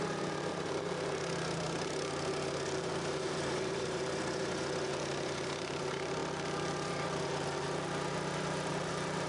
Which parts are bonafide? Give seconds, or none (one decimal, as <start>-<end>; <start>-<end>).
none